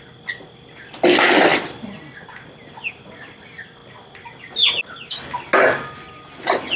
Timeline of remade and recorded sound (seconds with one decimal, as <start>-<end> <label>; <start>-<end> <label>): 0.0-6.8 recorded